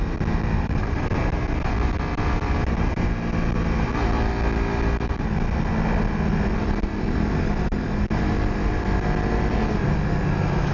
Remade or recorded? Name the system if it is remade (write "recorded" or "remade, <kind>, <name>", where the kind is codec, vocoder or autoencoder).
recorded